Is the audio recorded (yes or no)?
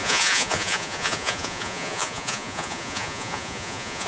no